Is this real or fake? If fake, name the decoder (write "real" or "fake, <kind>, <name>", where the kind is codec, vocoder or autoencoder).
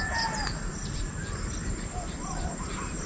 real